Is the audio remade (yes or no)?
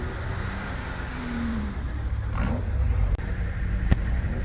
yes